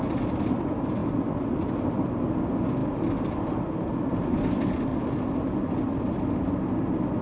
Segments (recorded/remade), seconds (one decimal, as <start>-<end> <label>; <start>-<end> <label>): 0.0-2.8 recorded; 2.8-3.7 remade; 3.7-4.9 recorded; 4.9-5.9 remade; 5.9-7.2 recorded